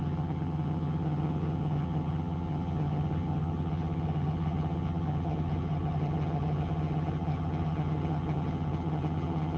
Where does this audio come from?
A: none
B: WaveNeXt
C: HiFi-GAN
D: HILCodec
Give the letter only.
C